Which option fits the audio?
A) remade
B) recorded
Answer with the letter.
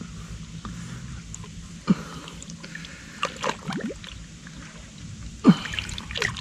B